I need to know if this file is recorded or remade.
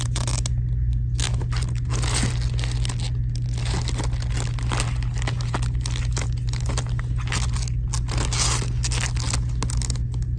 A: recorded